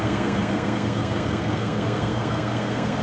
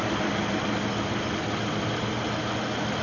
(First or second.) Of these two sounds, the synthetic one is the first